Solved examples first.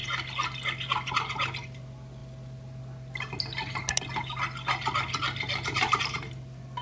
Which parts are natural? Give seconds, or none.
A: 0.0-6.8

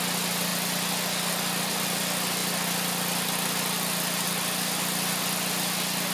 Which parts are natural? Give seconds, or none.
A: 0.0-6.1

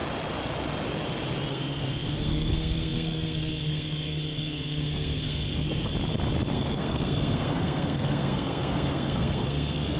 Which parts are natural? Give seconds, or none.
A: 0.0-1.5; 5.9-6.5

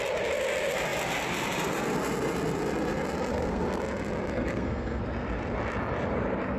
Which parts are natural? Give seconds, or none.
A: 0.0-3.3; 3.8-4.3; 5.0-6.6